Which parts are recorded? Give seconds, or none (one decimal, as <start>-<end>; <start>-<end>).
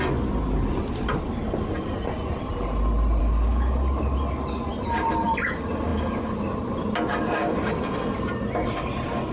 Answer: 0.0-3.2; 4.0-9.3